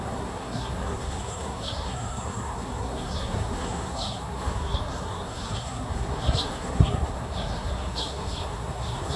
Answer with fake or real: fake